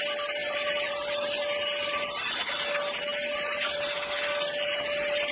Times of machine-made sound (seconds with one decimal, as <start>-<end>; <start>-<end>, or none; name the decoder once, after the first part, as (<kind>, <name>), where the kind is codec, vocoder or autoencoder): 0.4-0.9 (vocoder, BigVGAN v2)